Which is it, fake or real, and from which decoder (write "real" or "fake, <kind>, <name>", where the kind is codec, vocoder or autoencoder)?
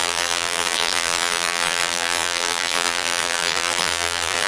fake, vocoder, BigVGAN v2